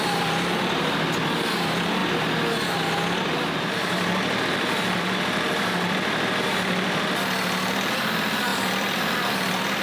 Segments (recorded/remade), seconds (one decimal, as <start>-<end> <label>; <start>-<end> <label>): 0.0-2.0 remade; 2.0-3.7 recorded; 3.7-9.8 remade